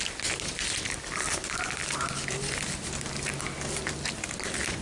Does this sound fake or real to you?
real